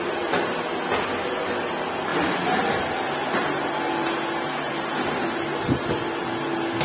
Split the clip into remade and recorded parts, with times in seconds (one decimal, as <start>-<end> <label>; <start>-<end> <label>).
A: 0.0-6.8 recorded